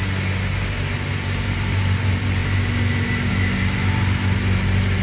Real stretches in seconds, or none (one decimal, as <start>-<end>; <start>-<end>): 0.0-5.0